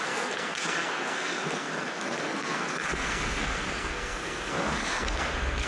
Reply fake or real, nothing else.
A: fake